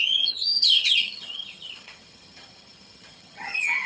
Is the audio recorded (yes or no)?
no